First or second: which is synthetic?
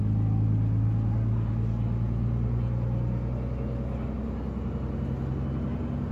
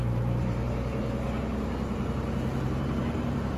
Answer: second